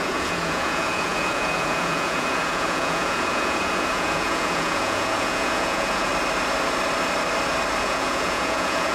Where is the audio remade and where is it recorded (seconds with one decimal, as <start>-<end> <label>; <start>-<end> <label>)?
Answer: 0.0-6.1 remade; 6.1-7.8 recorded; 7.8-8.9 remade